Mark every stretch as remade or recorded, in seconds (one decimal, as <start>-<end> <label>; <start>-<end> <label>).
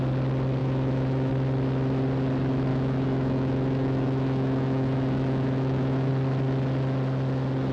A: 0.0-0.6 recorded; 0.6-1.3 remade; 1.3-2.7 recorded; 2.7-6.1 remade; 6.1-7.7 recorded